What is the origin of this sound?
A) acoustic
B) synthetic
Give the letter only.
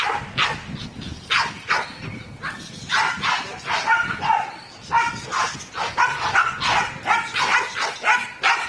A